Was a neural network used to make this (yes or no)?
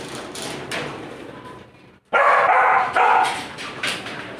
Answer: yes